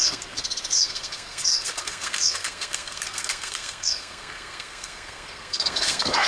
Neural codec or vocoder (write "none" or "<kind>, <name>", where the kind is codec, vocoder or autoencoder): codec, SNAC